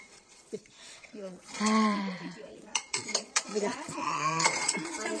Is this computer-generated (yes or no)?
yes